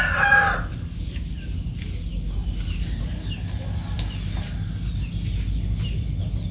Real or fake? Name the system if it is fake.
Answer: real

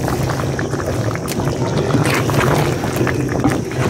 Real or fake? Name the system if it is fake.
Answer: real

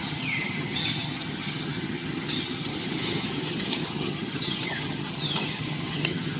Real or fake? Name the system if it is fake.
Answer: fake, vocoder, HiFi-GAN